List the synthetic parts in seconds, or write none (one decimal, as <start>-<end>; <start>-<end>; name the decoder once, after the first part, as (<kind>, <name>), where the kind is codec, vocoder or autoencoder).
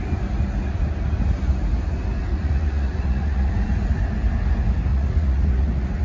2.3-3.5 (vocoder, Vocos); 4.9-6.0